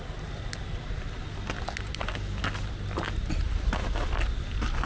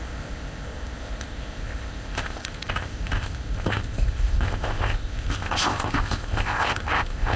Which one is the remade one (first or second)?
second